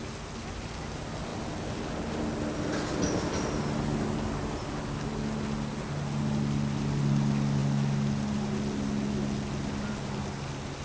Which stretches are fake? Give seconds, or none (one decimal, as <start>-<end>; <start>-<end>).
none